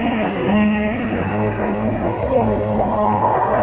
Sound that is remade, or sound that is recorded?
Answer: remade